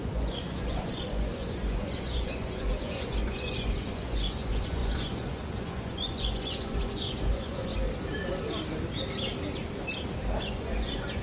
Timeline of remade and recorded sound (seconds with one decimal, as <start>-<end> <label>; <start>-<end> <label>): 0.0-7.7 remade; 7.7-10.4 recorded; 10.4-11.2 remade